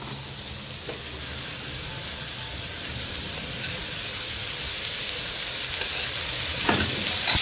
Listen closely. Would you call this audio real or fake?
real